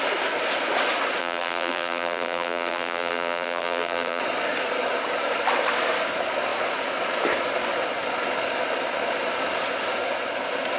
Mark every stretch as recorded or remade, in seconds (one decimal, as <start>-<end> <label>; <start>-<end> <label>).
0.0-1.2 recorded; 1.2-4.2 remade; 4.2-10.8 recorded